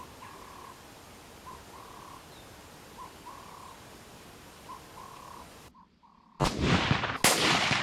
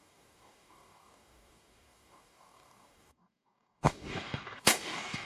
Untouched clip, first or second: first